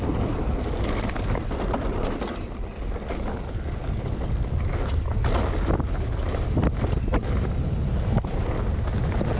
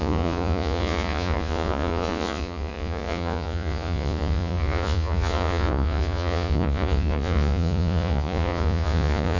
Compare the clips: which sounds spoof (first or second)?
second